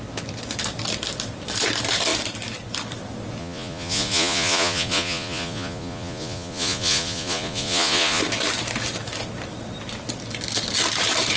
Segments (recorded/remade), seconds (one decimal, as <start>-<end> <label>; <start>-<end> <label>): 0.0-3.4 recorded; 3.4-8.2 remade; 8.2-11.4 recorded